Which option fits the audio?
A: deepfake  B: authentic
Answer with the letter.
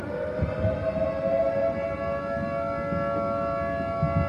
B